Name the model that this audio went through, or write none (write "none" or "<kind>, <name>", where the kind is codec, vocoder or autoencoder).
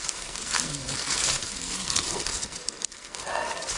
codec, SNAC